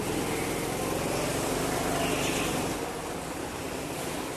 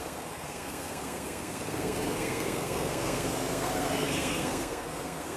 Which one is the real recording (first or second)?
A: first